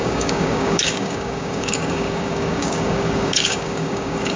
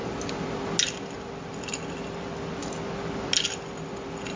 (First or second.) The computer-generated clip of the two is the first